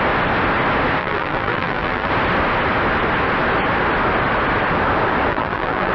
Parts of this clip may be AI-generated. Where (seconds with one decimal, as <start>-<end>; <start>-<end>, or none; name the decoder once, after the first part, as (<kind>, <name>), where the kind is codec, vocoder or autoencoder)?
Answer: 1.0-2.1 (vocoder, BigVGAN v2); 5.3-5.9